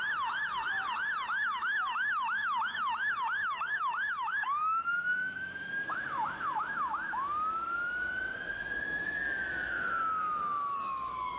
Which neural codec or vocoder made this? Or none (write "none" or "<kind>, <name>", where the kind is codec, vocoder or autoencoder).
autoencoder, DAC-VAE